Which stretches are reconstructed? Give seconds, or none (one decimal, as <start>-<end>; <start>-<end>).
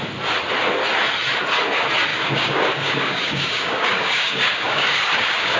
2.1-5.6